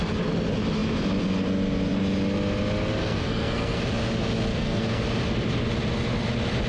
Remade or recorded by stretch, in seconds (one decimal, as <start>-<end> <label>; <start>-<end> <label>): 0.0-3.0 recorded; 3.0-3.8 remade; 3.8-4.5 recorded; 4.5-5.0 remade; 5.0-6.7 recorded